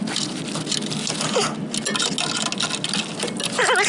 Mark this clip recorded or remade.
recorded